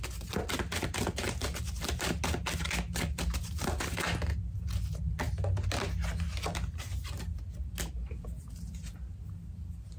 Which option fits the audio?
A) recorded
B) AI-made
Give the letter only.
A